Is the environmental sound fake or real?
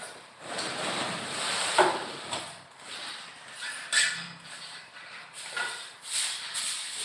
fake